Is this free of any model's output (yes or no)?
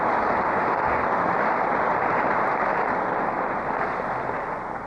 yes